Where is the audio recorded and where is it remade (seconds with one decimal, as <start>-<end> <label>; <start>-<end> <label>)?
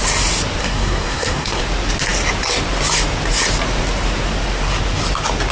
0.0-0.6 recorded; 0.6-1.6 remade; 1.6-5.5 recorded